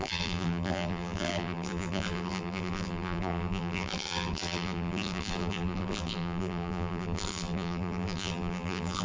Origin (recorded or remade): remade